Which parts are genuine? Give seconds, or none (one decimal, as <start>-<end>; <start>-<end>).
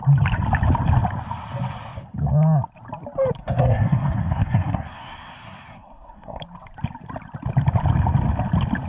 0.0-3.4; 6.4-8.9